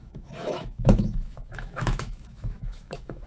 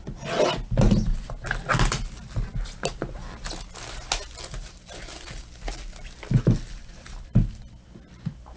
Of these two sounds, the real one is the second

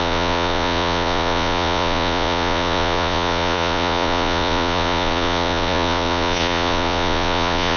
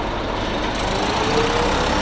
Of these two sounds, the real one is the second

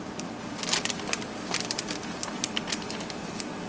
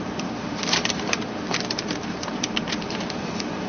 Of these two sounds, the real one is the first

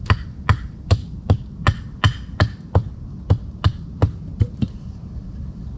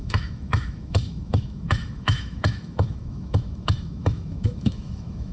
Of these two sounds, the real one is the first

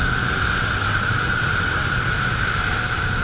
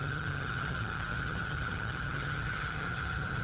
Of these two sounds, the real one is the first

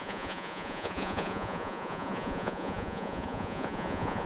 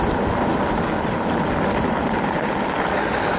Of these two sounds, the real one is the second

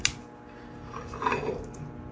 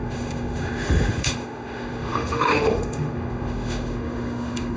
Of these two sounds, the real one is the first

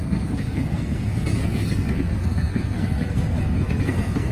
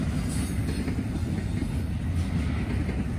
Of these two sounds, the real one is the second